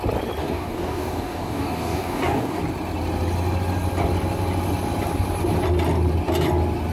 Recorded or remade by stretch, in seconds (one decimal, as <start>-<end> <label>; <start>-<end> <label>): 0.0-0.4 recorded; 0.4-2.6 remade; 2.6-6.9 recorded